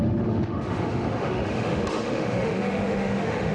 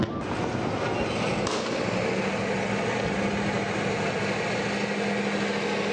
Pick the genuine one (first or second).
second